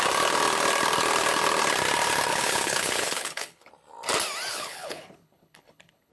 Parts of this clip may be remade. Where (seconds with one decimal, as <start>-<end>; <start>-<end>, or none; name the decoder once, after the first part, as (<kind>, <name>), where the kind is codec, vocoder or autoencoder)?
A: 2.3-3.7 (codec, HILCodec); 4.5-6.1